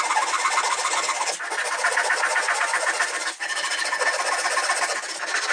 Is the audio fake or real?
real